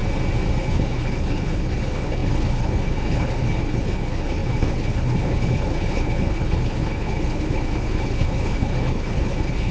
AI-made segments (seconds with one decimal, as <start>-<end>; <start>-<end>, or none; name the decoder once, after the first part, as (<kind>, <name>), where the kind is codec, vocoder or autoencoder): 0.6-9.7 (codec, HILCodec)